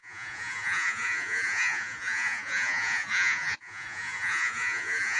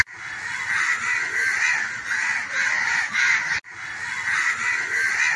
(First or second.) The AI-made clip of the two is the first